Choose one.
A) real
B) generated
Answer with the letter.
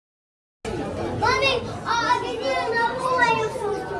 A